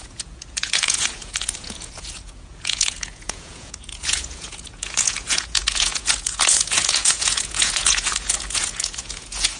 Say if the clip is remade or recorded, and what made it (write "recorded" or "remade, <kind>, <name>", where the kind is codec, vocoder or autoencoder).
remade, vocoder, Vocos